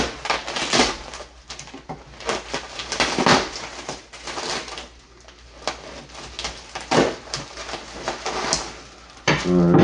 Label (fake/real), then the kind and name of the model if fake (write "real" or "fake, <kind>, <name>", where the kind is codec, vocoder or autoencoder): real